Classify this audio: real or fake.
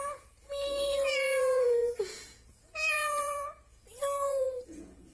fake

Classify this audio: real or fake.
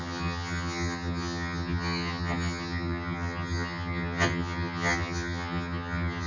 fake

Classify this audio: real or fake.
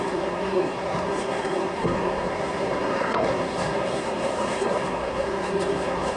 fake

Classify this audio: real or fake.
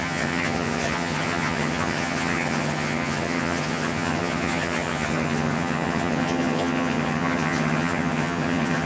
fake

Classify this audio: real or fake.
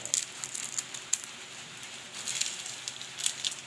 real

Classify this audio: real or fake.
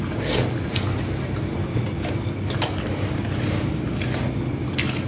real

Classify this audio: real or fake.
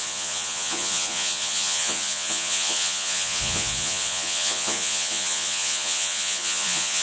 fake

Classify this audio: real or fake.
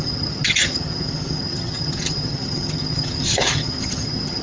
fake